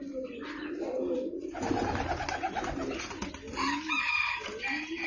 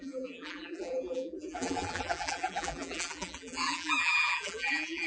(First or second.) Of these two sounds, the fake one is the second